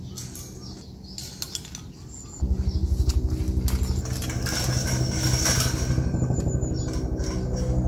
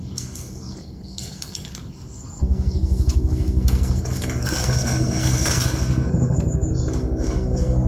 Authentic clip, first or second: first